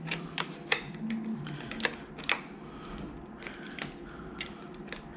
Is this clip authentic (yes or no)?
yes